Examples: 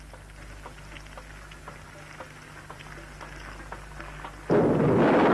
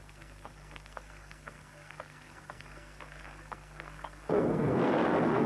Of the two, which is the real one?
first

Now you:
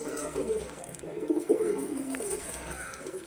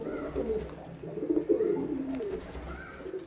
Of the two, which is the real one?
second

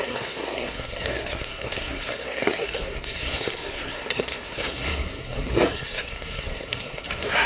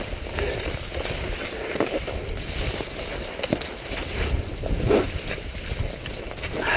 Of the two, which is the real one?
second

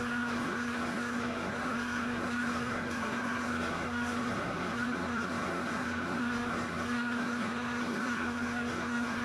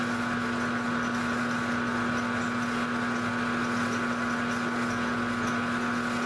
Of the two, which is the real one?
second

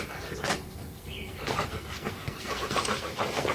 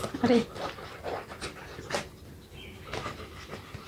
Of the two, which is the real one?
second